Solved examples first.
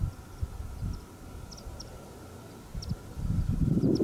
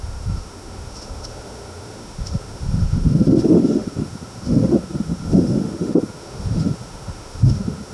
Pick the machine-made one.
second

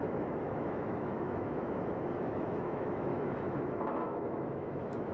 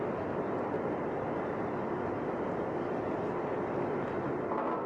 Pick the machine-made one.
first